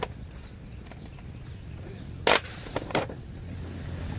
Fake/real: real